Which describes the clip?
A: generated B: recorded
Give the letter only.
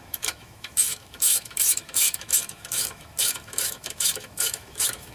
A